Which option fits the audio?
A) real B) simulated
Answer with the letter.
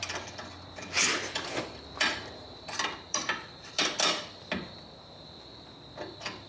B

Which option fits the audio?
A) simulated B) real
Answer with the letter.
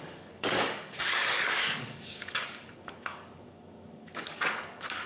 A